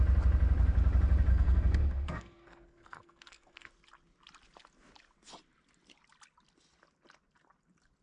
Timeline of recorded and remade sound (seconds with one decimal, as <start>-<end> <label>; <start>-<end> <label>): 0.0-1.3 recorded; 1.3-3.7 remade; 3.7-8.0 recorded